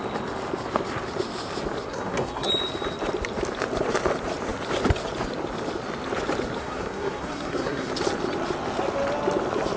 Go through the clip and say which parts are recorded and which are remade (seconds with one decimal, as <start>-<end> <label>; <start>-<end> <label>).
0.0-1.9 recorded; 1.9-2.5 remade; 2.5-6.6 recorded; 6.6-7.9 remade; 7.9-9.8 recorded